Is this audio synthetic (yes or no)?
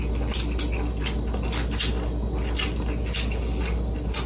no